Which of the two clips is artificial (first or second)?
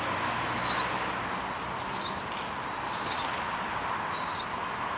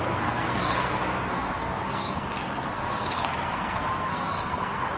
second